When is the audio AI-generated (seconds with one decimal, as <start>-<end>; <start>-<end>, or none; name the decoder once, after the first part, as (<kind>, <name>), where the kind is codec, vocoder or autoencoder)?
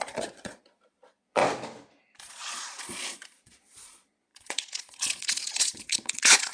0.0-1.4 (vocoder, Vocos); 2.2-6.5